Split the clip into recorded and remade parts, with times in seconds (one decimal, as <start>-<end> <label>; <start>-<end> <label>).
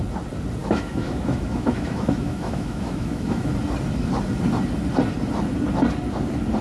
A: 0.0-0.6 recorded; 0.6-3.5 remade; 3.5-6.6 recorded